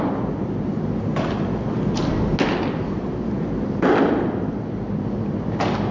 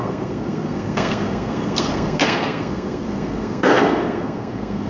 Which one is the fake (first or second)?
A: second